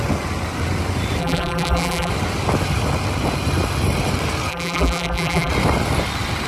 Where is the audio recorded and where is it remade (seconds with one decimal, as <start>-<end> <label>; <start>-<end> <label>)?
0.0-1.2 recorded; 1.2-2.1 remade; 2.1-4.5 recorded; 4.5-5.5 remade; 5.5-6.5 recorded